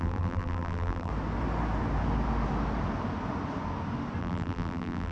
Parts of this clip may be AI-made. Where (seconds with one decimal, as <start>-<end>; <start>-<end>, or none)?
0.0-1.1; 4.2-5.1